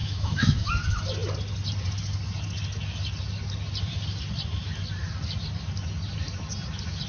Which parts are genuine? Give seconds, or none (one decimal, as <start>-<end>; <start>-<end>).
0.7-7.1